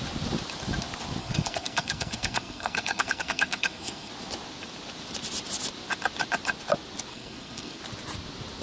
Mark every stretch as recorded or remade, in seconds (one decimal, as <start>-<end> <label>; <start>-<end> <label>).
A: 0.0-1.2 recorded; 1.2-4.1 remade; 4.1-7.1 recorded; 7.1-7.8 remade; 7.8-8.6 recorded